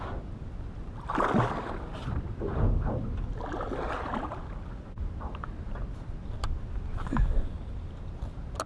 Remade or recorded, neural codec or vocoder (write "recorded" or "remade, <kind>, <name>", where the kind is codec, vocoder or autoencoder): recorded